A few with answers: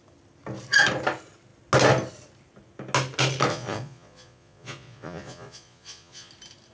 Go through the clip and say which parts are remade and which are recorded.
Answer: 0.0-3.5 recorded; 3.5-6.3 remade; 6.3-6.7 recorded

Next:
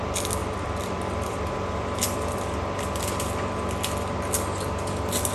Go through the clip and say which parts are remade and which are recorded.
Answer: 0.0-0.4 recorded; 0.4-3.1 remade; 3.1-5.3 recorded

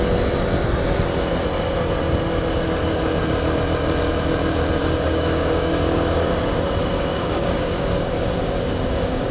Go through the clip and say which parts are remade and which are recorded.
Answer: 0.0-4.8 recorded; 4.8-6.6 remade; 6.6-7.1 recorded; 7.1-9.3 remade

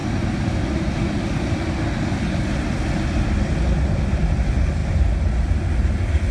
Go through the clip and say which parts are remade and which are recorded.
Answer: 0.0-6.3 recorded